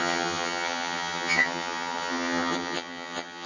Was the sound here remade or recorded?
remade